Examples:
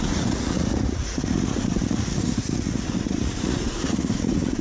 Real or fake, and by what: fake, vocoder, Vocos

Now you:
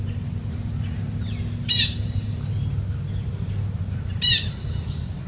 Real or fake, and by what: real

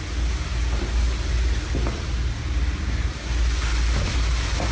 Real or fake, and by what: real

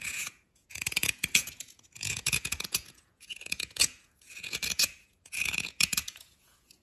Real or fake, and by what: fake, vocoder, Vocos